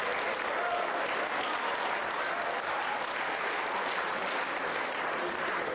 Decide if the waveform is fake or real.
real